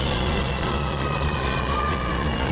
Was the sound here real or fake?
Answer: fake